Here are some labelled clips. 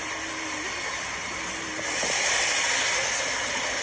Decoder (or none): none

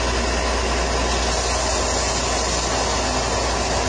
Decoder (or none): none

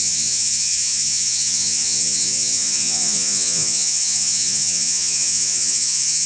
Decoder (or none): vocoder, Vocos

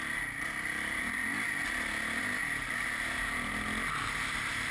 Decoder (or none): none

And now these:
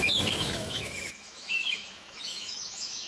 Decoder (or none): autoencoder, DAC-VAE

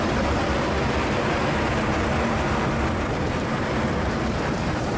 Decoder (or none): vocoder, BigVGAN v2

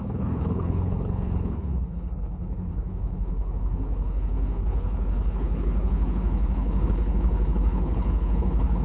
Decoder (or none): codec, HILCodec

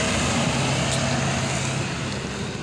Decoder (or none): none